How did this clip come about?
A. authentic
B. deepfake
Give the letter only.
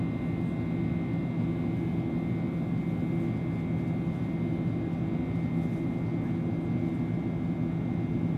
A